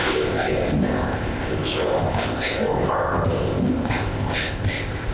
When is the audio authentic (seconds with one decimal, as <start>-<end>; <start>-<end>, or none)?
none